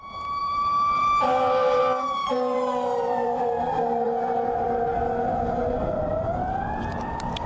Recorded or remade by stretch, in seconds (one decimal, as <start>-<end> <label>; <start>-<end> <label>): 0.0-0.4 recorded; 0.4-1.8 remade; 1.8-2.2 recorded; 2.2-6.4 remade; 6.4-7.5 recorded